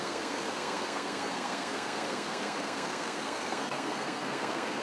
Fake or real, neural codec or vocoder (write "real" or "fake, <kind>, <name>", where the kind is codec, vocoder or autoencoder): fake, codec, SNAC